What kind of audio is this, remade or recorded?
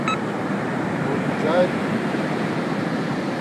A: remade